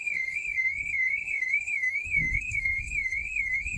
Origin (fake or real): fake